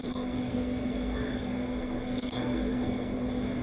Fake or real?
fake